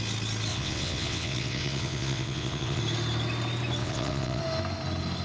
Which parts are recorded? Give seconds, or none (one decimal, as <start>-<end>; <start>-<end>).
0.0-0.5; 2.8-3.8; 4.4-5.2